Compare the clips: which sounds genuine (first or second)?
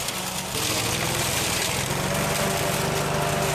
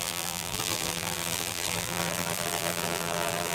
first